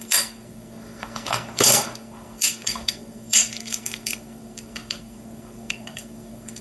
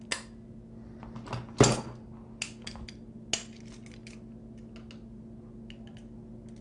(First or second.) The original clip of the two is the second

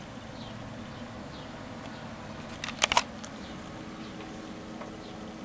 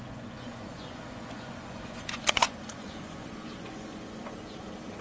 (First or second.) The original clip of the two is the first